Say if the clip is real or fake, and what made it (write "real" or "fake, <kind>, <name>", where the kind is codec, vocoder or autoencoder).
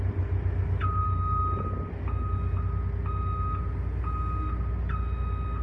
real